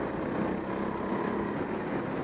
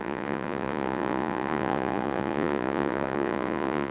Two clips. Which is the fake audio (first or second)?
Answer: second